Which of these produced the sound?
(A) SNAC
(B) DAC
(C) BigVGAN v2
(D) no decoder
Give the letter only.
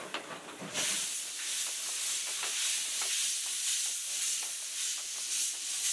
D